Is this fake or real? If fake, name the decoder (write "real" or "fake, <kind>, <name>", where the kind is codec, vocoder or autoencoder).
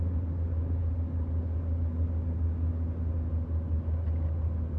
real